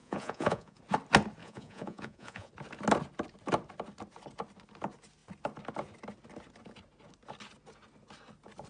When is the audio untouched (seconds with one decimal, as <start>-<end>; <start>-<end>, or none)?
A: 0.8-1.4; 2.5-8.7